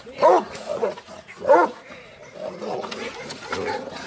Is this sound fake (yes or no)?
yes